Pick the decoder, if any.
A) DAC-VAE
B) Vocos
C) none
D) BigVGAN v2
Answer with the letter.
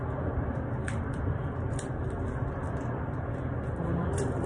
D